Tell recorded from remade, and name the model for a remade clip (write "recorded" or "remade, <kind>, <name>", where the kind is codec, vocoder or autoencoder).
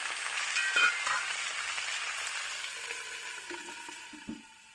recorded